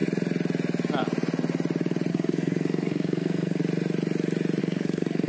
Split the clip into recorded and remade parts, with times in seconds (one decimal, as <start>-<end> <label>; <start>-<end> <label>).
0.0-2.1 recorded; 2.1-3.6 remade; 3.6-4.6 recorded; 4.6-5.3 remade